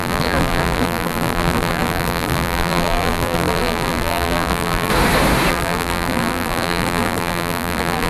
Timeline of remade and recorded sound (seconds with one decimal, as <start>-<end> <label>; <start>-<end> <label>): 0.0-4.9 remade; 4.9-5.5 recorded; 5.5-8.1 remade